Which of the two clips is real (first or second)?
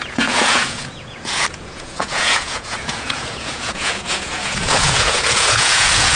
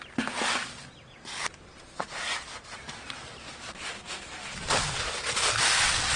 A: second